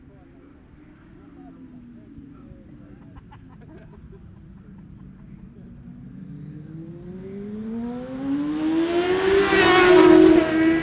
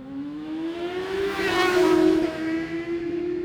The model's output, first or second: second